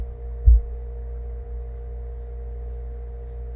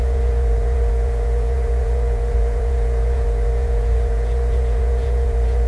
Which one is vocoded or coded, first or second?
second